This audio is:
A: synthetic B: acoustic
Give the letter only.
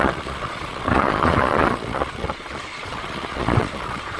A